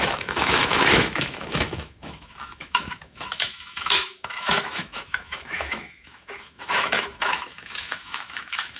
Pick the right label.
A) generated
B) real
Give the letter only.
A